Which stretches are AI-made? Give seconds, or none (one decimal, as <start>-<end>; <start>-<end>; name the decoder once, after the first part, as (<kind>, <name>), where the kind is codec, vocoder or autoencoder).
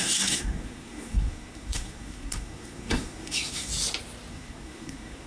0.0-3.7 (codec, SNAC); 4.3-5.3